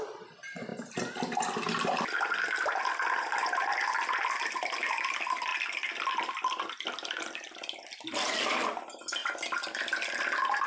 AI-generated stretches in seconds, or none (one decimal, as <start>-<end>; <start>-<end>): none